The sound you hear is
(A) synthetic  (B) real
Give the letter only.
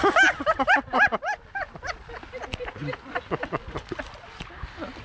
B